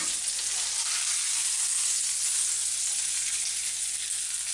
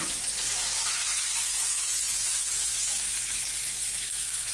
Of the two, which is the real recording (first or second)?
first